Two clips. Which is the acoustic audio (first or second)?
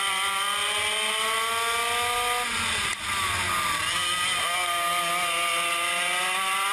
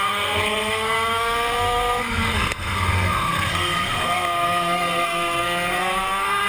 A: first